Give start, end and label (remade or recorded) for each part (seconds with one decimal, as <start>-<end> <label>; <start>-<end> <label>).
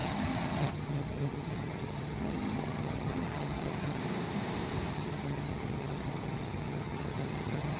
0.0-4.0 remade; 4.0-4.9 recorded; 4.9-7.8 remade